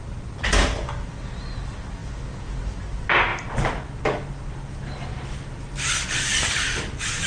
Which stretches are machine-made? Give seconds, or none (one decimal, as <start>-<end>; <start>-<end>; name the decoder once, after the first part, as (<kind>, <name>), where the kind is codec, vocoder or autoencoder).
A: none